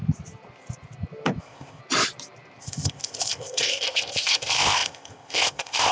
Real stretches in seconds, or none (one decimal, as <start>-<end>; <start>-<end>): 0.0-1.4; 1.8-2.6

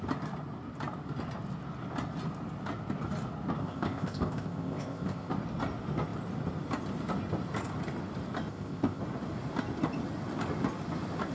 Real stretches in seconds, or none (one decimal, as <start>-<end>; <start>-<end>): 0.0-3.6; 5.3-8.5; 9.0-11.3

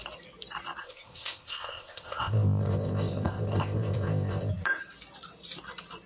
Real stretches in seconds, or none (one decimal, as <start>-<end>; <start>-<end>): 0.0-0.8; 4.5-6.1

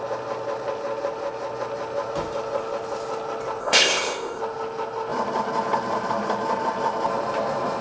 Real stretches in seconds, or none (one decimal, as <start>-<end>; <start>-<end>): 0.0-3.6; 4.4-7.8

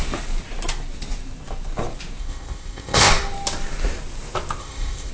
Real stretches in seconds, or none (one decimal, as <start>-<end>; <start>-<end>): 0.0-2.2; 3.1-4.6

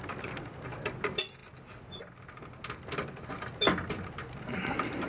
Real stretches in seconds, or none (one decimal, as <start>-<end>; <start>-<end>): 0.0-5.1

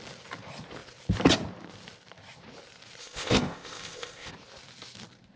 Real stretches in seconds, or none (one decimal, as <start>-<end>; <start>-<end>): 0.0-3.0; 4.3-5.4

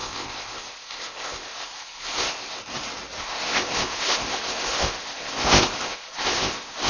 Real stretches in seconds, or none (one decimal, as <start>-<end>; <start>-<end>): 2.6-3.2